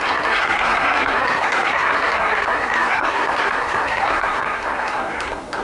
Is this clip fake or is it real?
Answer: fake